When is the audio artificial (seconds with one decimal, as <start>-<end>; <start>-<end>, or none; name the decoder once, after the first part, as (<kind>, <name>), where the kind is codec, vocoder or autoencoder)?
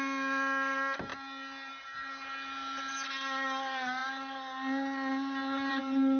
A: none